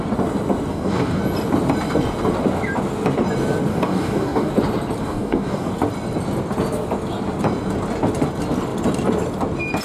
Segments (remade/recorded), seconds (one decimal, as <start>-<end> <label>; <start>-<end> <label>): 0.0-0.7 recorded; 0.7-1.2 remade; 1.2-3.7 recorded; 3.7-4.5 remade; 4.5-5.0 recorded; 5.0-5.7 remade; 5.7-9.8 recorded